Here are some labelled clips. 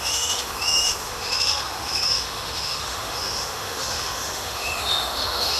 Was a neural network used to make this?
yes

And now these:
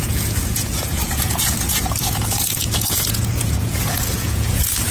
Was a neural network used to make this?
yes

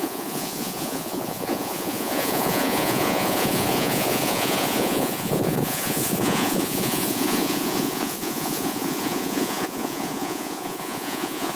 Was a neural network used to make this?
yes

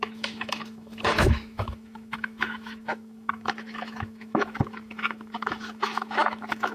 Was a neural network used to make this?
yes